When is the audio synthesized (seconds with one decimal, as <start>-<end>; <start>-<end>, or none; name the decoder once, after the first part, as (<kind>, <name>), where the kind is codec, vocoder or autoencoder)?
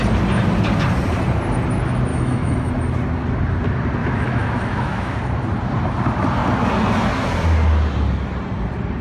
2.1-2.7 (autoencoder, DAC-VAE); 4.0-5.2